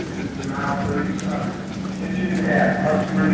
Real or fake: real